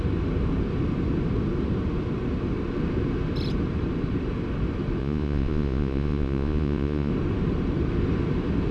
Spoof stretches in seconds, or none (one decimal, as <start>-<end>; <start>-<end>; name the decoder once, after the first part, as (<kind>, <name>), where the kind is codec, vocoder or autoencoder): 5.0-7.1 (vocoder, Vocos)